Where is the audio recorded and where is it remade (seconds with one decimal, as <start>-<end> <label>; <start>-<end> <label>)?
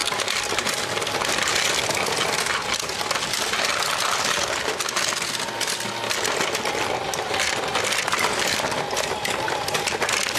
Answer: 0.0-10.4 recorded